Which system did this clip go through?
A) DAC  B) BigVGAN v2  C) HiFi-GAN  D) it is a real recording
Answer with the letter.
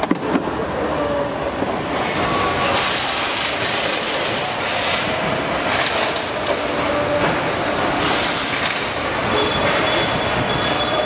D